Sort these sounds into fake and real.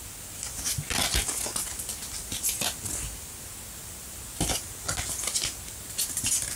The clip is real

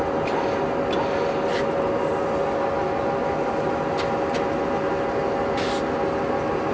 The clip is real